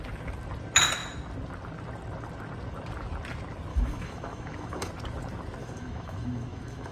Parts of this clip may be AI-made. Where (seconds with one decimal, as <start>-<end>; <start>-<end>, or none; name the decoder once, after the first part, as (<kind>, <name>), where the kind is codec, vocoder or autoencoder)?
3.7-4.9 (autoencoder, DAC-VAE); 5.6-6.9